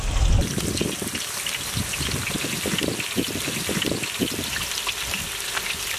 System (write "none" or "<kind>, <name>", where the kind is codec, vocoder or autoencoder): none